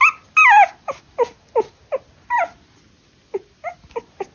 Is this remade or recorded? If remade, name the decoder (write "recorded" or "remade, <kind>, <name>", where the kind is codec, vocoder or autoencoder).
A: recorded